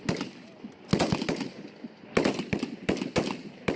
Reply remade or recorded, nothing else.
recorded